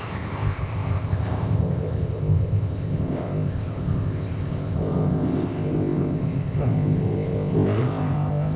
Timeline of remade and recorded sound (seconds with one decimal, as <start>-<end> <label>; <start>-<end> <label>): 0.0-8.6 remade